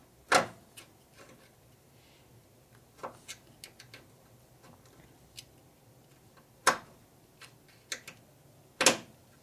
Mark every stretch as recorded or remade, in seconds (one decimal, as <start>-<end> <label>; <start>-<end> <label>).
0.0-9.4 recorded